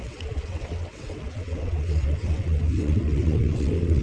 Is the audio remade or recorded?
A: remade